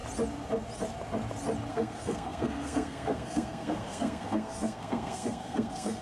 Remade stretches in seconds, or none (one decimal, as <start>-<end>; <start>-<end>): 1.7-6.0